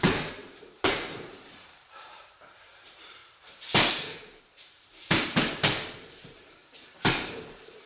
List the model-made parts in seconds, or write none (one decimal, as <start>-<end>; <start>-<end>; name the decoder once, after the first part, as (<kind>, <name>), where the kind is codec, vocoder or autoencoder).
0.0-0.4 (vocoder, BigVGAN v2); 1.5-3.2; 4.6-6.6; 7.1-7.9